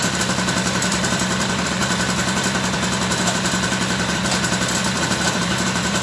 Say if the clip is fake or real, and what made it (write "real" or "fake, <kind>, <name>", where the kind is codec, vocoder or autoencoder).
fake, vocoder, BigVGAN v2